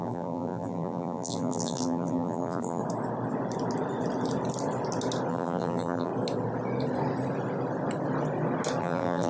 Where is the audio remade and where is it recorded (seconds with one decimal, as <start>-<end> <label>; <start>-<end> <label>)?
0.0-2.8 remade; 2.8-5.3 recorded; 5.3-6.1 remade; 6.1-8.8 recorded; 8.8-9.3 remade